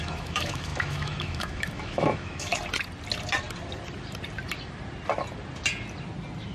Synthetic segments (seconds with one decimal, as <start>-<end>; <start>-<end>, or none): 0.0-2.5